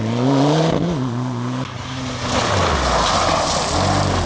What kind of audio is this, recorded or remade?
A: recorded